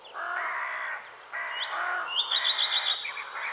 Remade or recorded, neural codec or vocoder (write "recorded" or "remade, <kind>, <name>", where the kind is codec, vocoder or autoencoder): recorded